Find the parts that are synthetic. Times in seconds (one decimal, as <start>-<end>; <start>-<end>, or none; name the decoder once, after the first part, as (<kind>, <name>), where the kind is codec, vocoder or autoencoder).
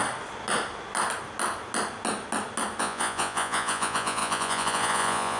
2.8-5.4 (vocoder, Vocos)